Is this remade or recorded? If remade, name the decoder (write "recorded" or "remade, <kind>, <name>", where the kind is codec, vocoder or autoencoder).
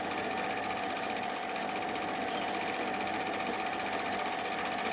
recorded